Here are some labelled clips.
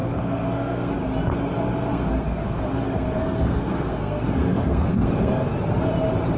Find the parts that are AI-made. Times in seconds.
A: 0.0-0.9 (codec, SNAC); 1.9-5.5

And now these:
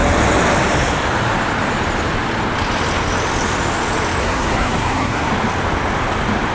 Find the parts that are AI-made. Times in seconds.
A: 4.2-5.3 (codec, SNAC)